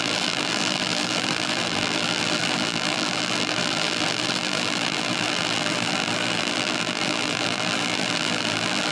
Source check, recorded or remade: remade